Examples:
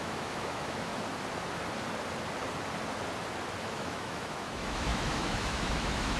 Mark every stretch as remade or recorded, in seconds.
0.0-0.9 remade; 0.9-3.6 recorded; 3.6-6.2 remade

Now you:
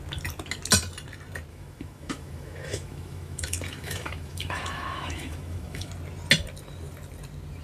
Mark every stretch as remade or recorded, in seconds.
0.0-1.5 recorded; 1.5-5.9 remade; 5.9-7.6 recorded

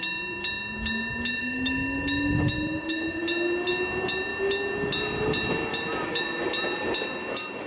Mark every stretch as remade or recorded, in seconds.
0.0-1.4 recorded; 1.4-3.2 remade; 3.2-7.7 recorded

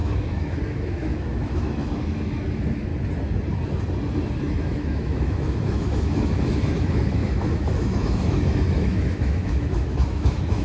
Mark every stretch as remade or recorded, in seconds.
0.0-2.9 remade; 2.9-4.5 recorded; 4.5-10.6 remade